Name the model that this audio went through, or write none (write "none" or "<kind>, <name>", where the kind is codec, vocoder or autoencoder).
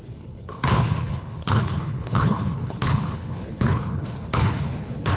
codec, HILCodec